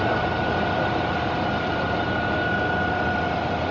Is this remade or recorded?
recorded